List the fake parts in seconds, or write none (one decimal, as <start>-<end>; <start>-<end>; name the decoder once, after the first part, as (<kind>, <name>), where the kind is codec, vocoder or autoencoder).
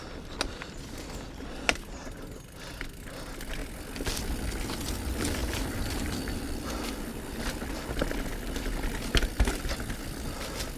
5.4-7.0 (vocoder, BigVGAN v2)